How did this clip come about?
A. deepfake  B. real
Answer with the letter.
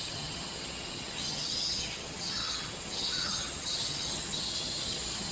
A